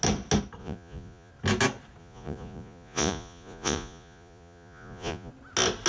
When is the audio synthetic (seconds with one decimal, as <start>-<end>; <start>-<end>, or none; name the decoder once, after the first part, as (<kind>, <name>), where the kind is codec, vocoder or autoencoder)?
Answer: 0.6-1.3 (vocoder, Vocos); 2.0-5.3